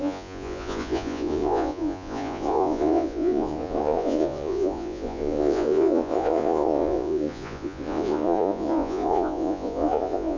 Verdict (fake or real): fake